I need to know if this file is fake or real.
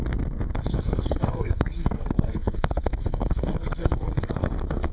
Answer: fake